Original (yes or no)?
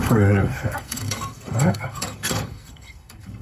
no